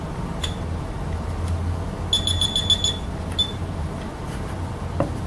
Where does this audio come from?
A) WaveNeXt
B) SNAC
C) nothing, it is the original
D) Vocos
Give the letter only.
C